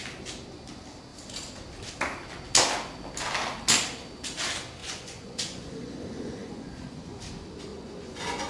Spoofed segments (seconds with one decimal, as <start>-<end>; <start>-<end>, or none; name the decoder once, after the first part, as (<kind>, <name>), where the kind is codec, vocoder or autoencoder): 4.8-7.2 (vocoder, Vocos); 7.7-8.5